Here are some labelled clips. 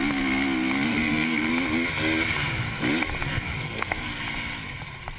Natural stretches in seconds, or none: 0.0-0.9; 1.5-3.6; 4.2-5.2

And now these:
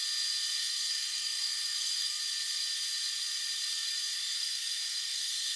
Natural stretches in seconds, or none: 0.0-0.6; 2.2-4.2

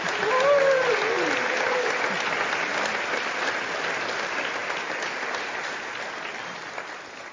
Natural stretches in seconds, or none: 0.0-7.3

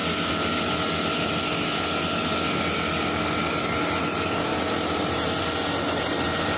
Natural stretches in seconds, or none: 0.0-4.5; 5.4-6.6